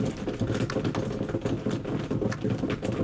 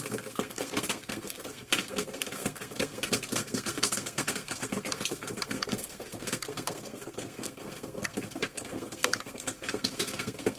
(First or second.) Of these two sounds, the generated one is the second